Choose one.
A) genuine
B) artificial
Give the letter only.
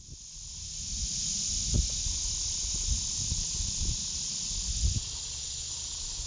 A